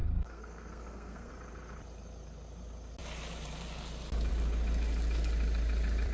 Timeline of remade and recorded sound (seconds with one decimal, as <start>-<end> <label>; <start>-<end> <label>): 0.0-1.3 remade; 1.3-6.1 recorded